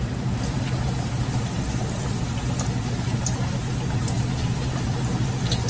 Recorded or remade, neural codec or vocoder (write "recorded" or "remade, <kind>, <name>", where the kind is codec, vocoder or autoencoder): recorded